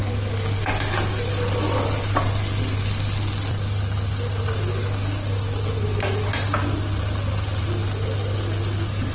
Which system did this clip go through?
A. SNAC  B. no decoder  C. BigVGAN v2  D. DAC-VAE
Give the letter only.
B